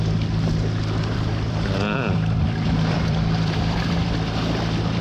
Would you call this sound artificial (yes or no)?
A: yes